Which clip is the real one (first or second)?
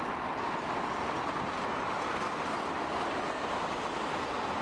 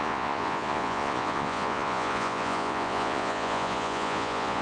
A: first